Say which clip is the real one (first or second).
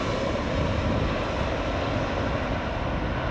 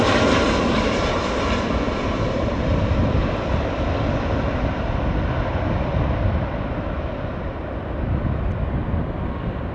first